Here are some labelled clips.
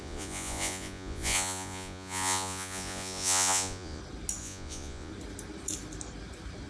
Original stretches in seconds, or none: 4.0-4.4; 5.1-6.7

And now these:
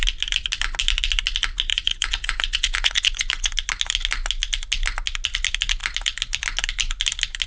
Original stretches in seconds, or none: 0.0-1.7; 3.5-7.5

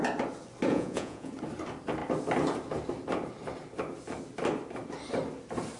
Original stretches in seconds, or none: 0.0-0.7; 1.3-5.8

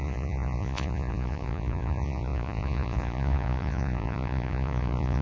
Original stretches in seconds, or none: none

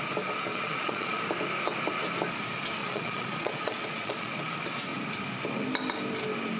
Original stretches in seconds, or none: 0.0-0.5; 1.2-2.8; 4.3-6.6

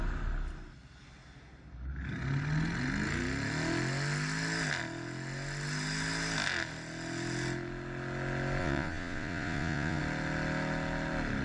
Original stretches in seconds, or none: 0.0-8.6; 10.0-11.4

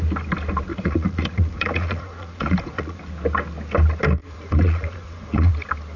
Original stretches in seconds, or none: 0.0-0.7; 3.0-4.2; 5.5-6.0